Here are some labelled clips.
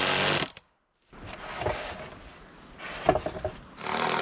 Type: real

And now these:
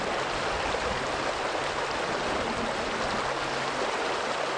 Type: real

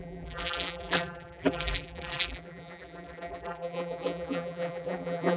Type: fake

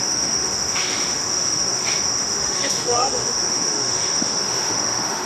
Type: fake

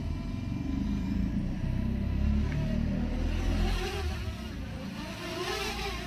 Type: real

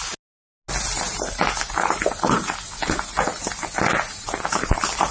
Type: real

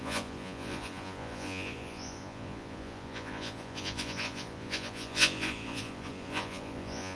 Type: fake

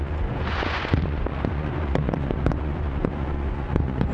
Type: fake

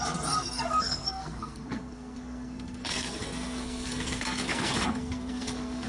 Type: fake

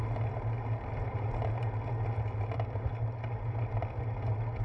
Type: real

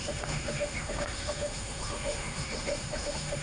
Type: fake